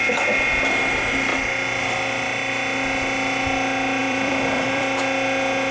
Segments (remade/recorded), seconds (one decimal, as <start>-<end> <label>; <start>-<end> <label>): 0.0-4.0 recorded; 4.0-5.0 remade; 5.0-5.7 recorded